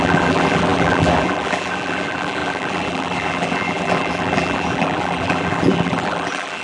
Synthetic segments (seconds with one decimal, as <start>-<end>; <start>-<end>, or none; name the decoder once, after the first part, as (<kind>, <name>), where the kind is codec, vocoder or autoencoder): 0.0-6.6 (vocoder, BigVGAN v2)